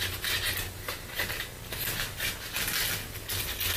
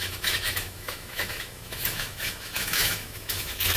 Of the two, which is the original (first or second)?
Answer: first